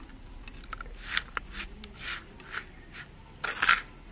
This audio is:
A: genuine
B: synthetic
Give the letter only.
A